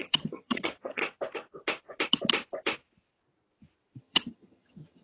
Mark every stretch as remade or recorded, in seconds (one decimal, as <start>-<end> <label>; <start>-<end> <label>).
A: 0.0-1.0 remade; 1.0-4.0 recorded; 4.0-5.0 remade